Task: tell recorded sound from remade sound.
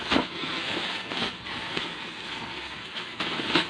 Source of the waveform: remade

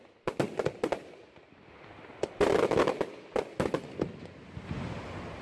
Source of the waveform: recorded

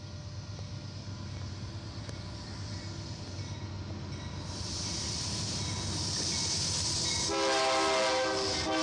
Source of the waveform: recorded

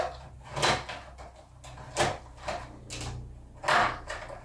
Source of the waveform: recorded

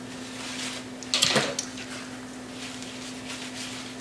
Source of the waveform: recorded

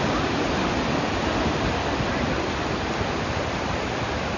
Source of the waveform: recorded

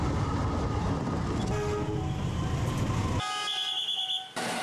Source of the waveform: recorded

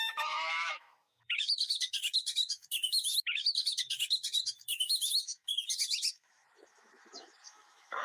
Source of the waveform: remade